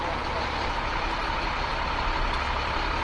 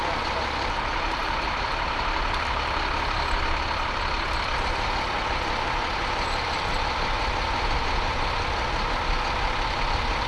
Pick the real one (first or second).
first